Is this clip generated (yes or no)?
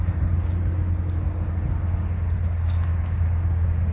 no